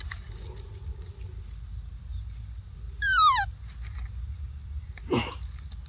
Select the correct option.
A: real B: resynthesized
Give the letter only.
A